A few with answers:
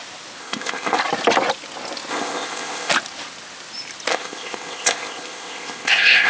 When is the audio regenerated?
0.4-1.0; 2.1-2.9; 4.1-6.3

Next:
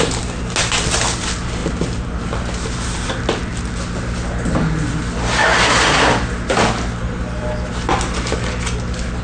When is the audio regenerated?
none

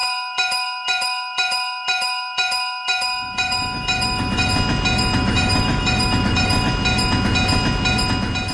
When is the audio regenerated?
0.0-4.5; 5.2-6.7